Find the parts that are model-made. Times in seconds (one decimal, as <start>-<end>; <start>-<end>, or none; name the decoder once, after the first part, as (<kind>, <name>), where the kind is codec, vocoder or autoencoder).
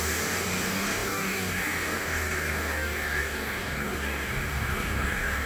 0.0-5.5 (codec, DAC)